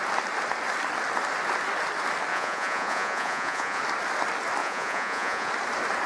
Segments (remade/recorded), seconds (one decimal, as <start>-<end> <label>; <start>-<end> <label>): 0.0-2.3 recorded; 2.3-3.8 remade; 3.8-4.6 recorded; 4.6-5.5 remade; 5.5-6.1 recorded

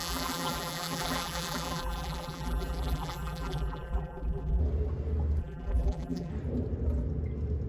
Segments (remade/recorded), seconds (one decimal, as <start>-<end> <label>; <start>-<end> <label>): 0.0-4.6 remade; 4.6-5.4 recorded; 5.4-6.3 remade; 6.3-7.7 recorded

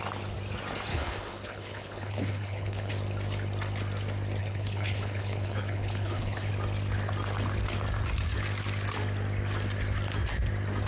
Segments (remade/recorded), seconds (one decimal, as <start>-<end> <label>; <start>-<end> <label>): 0.0-0.9 recorded; 0.9-2.9 remade; 2.9-4.4 recorded; 4.4-6.5 remade; 6.5-10.9 recorded

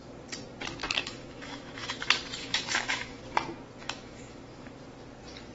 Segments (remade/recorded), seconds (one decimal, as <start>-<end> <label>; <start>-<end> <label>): 0.0-0.8 recorded; 0.8-2.0 remade; 2.0-2.4 recorded; 2.4-3.2 remade; 3.2-3.8 recorded; 3.8-4.7 remade; 4.7-5.5 recorded

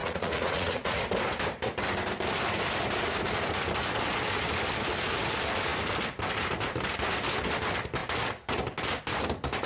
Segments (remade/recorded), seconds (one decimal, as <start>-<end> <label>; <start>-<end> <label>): 0.0-1.0 remade; 1.0-9.7 recorded

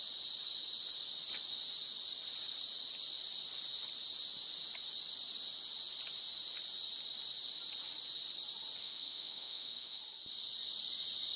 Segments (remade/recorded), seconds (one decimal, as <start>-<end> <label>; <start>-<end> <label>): 0.0-8.8 recorded; 8.8-10.0 remade; 10.0-11.4 recorded

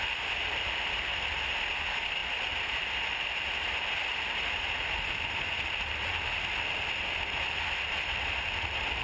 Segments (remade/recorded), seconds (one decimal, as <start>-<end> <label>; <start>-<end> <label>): 0.0-9.0 recorded

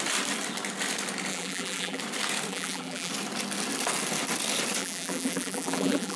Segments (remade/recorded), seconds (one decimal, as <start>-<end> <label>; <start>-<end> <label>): 0.0-1.3 recorded; 1.3-2.0 remade; 2.0-2.5 recorded; 2.5-3.1 remade; 3.1-4.8 recorded; 4.8-6.2 remade